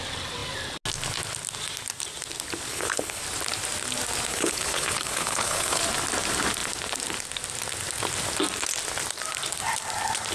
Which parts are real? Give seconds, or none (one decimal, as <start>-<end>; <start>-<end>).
0.0-2.7; 3.2-4.3; 5.8-10.3